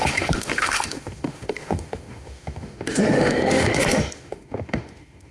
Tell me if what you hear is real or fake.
fake